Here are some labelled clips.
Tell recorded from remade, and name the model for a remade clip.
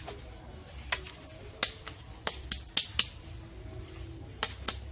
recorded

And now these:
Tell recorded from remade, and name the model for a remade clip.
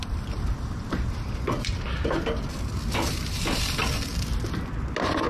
recorded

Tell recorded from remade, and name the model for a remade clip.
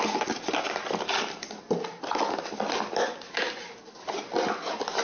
recorded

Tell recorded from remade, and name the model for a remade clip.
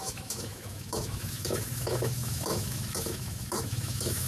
remade, autoencoder, DAC-VAE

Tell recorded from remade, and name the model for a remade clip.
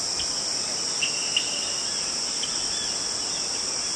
recorded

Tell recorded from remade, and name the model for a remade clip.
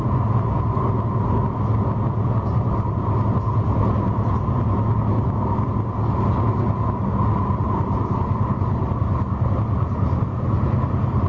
recorded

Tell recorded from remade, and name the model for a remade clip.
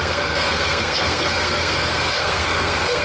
remade, codec, SNAC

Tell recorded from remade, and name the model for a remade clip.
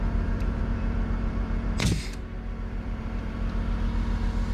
remade, vocoder, BigVGAN v2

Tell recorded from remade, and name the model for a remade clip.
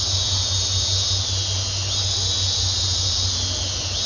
recorded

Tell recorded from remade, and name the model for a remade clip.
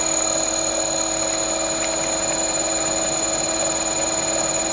recorded